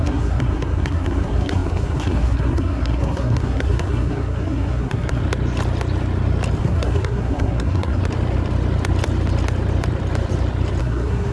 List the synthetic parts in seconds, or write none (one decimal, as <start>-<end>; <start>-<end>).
0.0-5.2; 6.6-8.0; 10.8-11.3